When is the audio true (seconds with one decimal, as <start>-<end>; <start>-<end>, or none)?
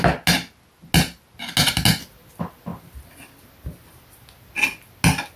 0.0-5.4